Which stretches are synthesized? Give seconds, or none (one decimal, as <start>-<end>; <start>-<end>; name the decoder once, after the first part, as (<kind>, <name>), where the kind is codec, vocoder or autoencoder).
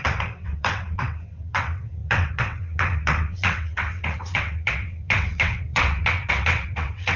0.0-7.2 (vocoder, WaveNeXt)